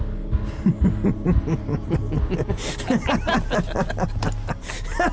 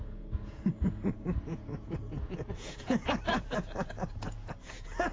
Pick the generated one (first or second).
second